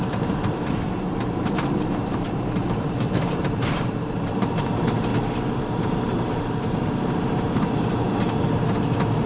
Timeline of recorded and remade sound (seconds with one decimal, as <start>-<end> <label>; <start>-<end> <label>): 0.0-5.1 remade; 5.1-5.7 recorded; 5.7-9.3 remade